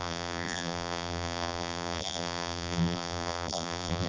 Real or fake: fake